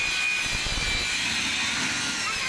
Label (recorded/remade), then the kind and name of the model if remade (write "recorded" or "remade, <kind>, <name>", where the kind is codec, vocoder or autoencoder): recorded